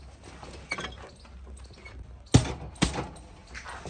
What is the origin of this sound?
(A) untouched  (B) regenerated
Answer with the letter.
A